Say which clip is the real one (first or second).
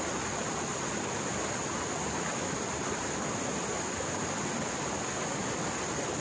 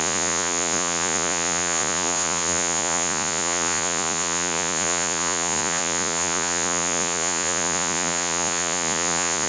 first